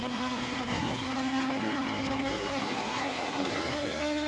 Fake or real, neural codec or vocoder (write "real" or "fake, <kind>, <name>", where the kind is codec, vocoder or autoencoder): fake, codec, SNAC